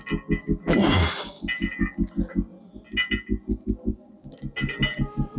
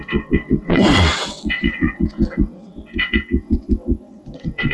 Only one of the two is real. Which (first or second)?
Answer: first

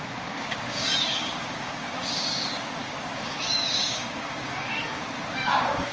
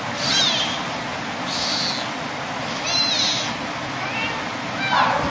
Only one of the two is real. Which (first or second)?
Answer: second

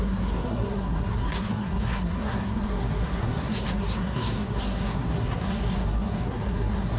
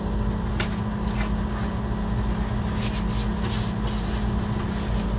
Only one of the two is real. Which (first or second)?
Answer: second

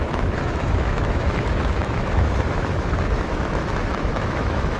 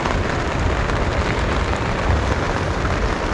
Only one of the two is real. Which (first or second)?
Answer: second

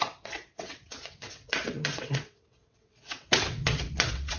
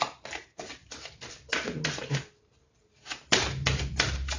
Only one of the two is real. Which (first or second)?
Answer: second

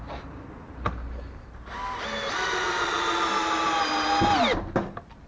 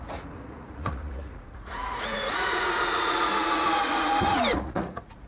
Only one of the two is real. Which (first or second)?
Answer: first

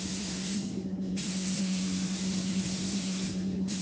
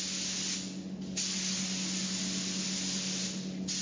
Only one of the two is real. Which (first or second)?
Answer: second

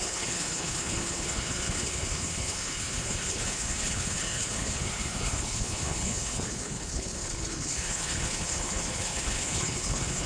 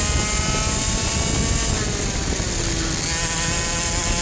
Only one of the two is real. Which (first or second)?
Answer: second